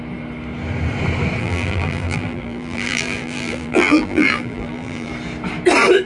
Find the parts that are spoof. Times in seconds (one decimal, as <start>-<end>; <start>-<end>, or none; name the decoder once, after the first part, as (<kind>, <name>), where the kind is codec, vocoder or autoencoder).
1.4-5.1 (vocoder, BigVGAN v2)